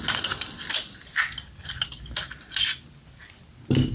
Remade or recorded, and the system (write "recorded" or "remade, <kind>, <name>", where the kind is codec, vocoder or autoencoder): recorded